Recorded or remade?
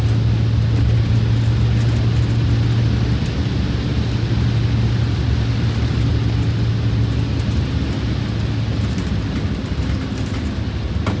recorded